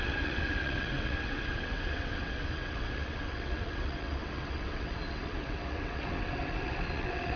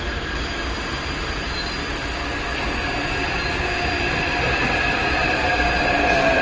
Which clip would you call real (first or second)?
second